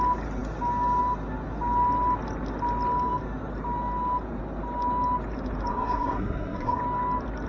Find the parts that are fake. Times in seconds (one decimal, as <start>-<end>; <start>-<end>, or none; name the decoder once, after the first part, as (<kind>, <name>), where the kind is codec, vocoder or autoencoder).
5.7-6.8 (codec, SNAC)